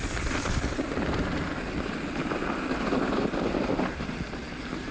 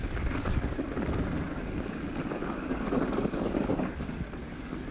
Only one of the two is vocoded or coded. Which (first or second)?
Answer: second